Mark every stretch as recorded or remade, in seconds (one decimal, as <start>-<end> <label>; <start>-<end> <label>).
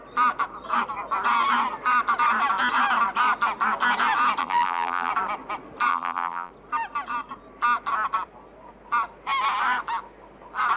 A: 0.0-4.4 recorded; 4.4-5.1 remade; 5.1-5.9 recorded; 5.9-6.5 remade; 6.5-10.8 recorded